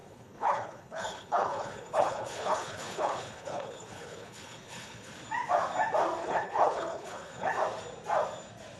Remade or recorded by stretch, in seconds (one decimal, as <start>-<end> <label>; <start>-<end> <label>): 0.0-5.1 remade; 5.1-6.2 recorded; 6.2-7.5 remade; 7.5-8.8 recorded